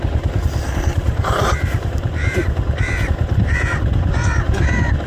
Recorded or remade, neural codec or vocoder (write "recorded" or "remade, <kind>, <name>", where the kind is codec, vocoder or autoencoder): remade, vocoder, BigVGAN v2